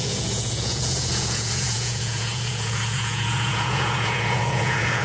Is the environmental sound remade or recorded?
remade